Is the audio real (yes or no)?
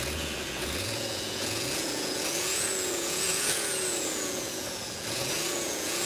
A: no